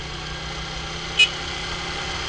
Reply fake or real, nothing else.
real